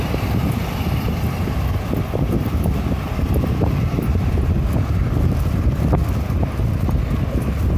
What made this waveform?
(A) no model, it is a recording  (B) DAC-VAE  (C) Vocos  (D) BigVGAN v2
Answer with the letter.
D